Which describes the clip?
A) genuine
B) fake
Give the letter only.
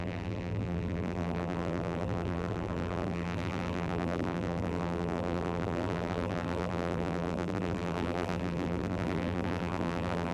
B